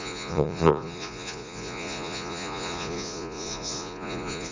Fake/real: fake